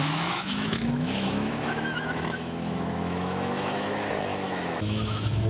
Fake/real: fake